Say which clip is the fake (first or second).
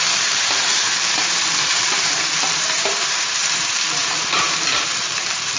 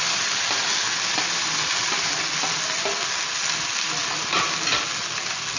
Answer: first